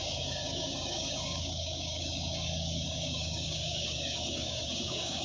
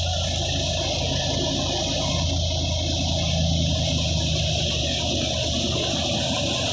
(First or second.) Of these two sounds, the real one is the second